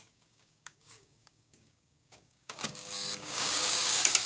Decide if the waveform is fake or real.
fake